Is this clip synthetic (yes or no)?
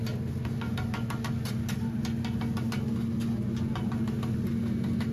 no